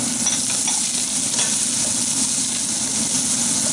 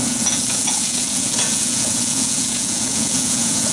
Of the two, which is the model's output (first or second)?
second